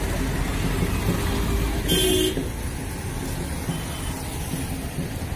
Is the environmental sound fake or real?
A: real